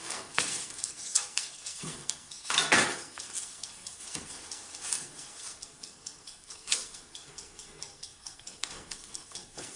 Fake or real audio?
fake